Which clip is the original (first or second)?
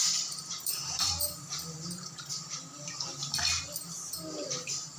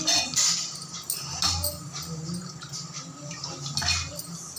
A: second